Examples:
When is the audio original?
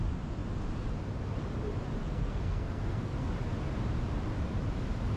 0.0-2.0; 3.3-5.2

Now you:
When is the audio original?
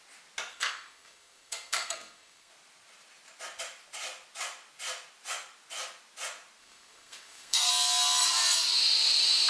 0.0-0.5; 2.5-6.6; 7.7-9.5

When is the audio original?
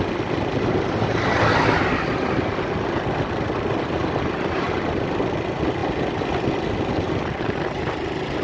0.0-8.4